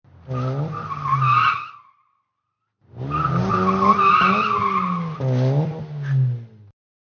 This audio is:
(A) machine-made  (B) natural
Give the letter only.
B